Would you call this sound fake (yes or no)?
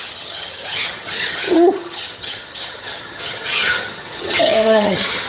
yes